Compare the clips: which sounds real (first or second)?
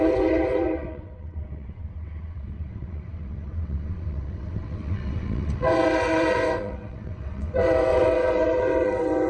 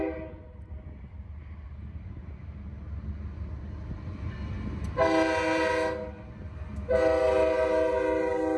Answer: second